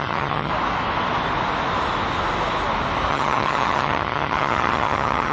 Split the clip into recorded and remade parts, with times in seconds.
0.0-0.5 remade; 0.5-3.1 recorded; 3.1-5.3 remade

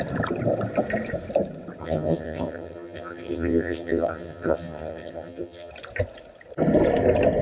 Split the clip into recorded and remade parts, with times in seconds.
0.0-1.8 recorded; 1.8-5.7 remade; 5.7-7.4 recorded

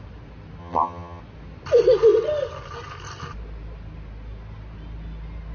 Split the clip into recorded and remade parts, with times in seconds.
0.0-0.6 recorded; 0.6-1.2 remade; 1.2-5.5 recorded